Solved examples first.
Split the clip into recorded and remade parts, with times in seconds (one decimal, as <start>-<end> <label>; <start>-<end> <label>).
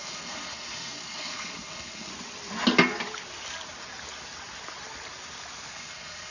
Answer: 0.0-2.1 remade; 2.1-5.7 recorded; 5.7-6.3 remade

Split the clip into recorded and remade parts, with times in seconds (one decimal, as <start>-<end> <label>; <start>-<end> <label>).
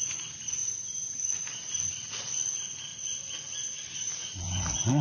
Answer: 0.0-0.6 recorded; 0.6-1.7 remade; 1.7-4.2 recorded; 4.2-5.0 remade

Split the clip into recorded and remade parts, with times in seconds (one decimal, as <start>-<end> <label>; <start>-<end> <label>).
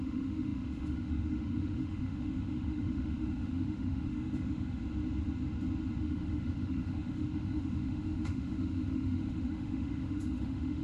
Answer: 0.0-4.8 remade; 4.8-6.0 recorded; 6.0-10.8 remade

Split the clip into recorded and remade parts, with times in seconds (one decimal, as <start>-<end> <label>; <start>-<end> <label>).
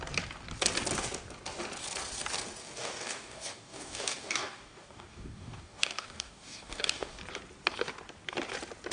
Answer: 0.0-2.6 recorded; 2.6-7.2 remade; 7.2-8.9 recorded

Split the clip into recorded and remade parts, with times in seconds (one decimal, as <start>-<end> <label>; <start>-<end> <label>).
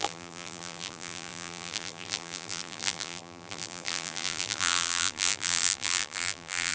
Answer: 0.0-6.7 remade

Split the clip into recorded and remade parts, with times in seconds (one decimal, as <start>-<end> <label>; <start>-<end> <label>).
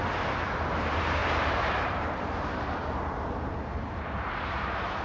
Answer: 0.0-0.7 recorded; 0.7-5.0 remade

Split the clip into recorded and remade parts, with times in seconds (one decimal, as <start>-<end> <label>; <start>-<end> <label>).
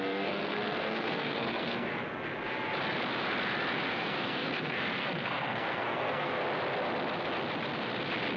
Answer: 0.0-1.9 remade; 1.9-3.9 recorded; 3.9-6.4 remade; 6.4-8.4 recorded